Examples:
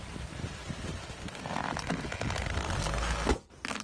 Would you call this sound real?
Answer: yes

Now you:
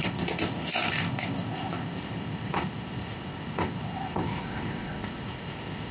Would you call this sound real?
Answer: no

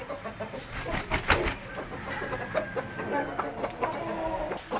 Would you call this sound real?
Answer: yes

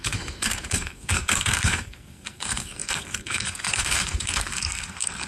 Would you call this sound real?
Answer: no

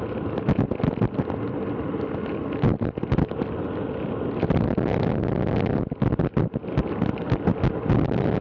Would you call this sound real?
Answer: yes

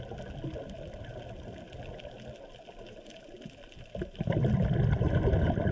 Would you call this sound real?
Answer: yes